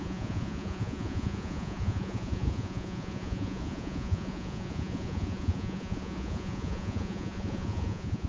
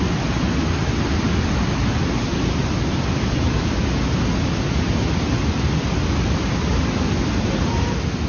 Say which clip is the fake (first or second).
first